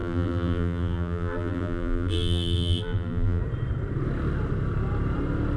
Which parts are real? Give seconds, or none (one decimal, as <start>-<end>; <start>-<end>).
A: 3.4-5.6